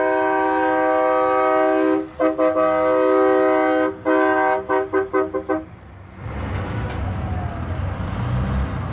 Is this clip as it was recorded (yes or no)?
yes